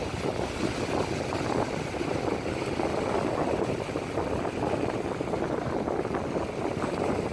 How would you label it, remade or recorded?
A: recorded